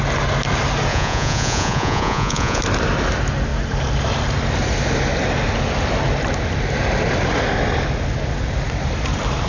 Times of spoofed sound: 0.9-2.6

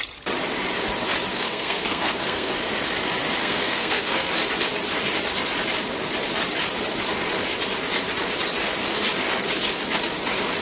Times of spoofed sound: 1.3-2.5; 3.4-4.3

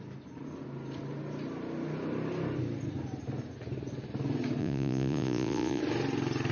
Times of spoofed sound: 4.6-5.8